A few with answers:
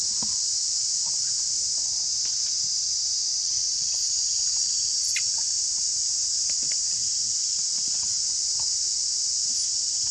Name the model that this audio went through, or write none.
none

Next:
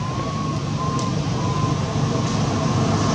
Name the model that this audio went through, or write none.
none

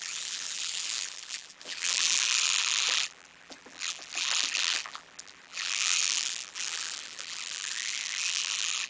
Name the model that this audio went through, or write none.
vocoder, BigVGAN v2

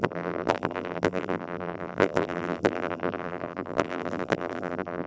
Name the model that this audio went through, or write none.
vocoder, BigVGAN v2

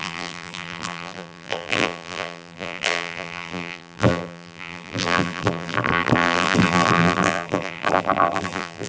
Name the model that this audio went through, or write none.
vocoder, BigVGAN v2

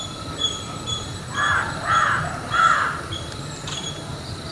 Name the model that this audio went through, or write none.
vocoder, BigVGAN v2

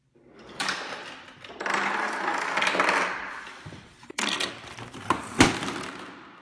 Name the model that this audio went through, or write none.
vocoder, BigVGAN v2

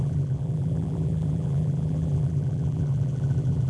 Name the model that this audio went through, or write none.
vocoder, BigVGAN v2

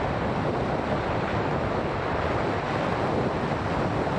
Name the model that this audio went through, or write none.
vocoder, BigVGAN v2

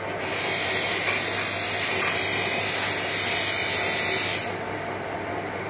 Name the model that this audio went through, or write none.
vocoder, BigVGAN v2